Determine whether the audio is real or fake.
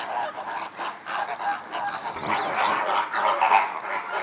real